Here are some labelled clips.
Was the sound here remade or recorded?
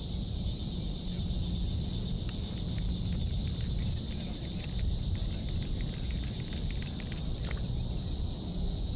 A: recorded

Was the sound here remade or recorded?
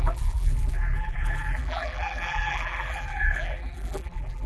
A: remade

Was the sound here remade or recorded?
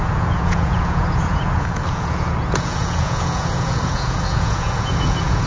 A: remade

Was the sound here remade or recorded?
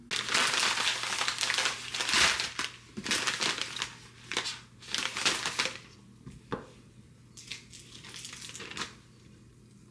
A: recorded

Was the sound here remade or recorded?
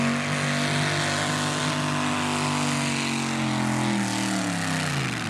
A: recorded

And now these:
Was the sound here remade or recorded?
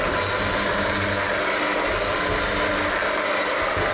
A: recorded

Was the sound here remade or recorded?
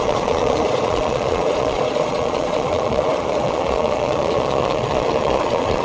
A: remade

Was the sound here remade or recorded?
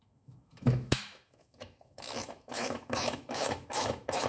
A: remade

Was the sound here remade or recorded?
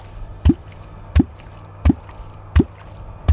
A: recorded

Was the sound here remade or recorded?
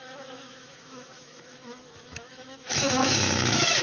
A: remade